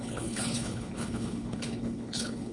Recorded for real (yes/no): no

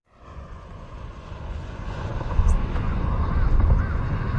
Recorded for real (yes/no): no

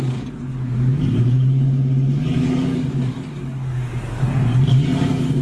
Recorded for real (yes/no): no